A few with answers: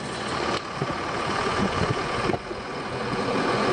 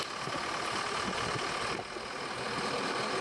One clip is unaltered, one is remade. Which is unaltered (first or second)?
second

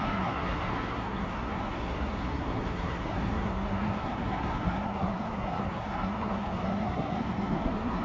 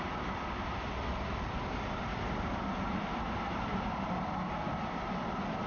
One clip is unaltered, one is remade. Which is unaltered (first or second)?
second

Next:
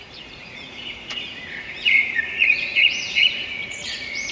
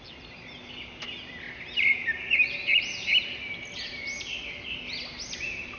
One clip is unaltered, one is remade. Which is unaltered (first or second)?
second